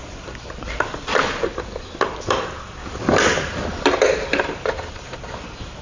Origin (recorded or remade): remade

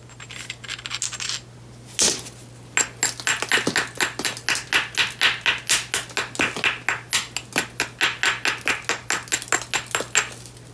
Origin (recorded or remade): recorded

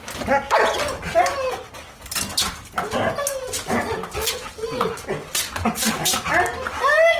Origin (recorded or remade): recorded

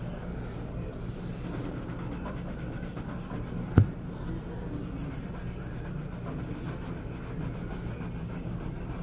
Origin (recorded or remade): recorded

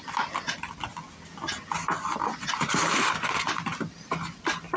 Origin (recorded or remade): recorded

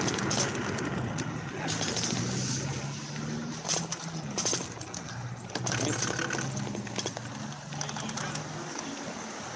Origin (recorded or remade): recorded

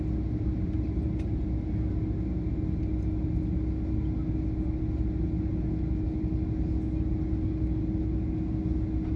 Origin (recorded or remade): recorded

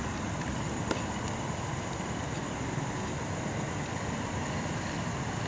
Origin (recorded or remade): recorded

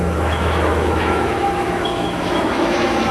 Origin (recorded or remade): remade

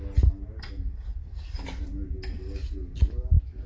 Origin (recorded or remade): recorded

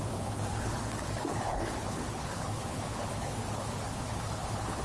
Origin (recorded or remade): remade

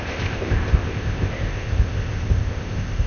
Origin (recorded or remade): remade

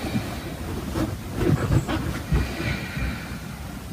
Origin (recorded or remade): recorded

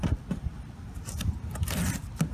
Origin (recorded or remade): remade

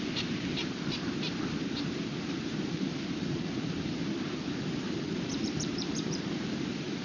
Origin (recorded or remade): remade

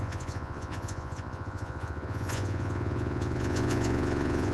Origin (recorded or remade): remade